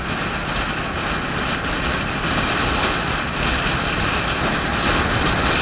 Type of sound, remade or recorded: recorded